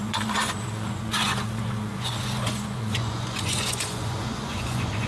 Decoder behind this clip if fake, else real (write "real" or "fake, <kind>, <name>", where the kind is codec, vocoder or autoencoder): fake, vocoder, Vocos